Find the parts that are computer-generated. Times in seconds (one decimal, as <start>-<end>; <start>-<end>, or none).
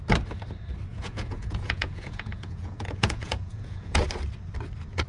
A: 0.9-4.0